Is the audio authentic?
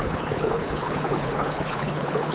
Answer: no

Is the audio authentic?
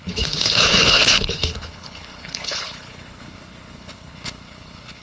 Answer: no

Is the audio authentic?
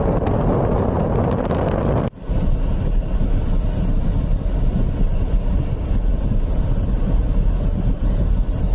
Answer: yes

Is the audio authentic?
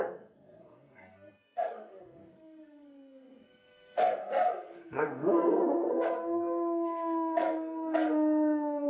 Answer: no